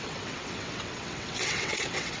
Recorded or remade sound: remade